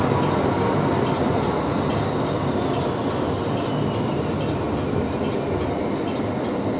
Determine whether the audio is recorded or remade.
recorded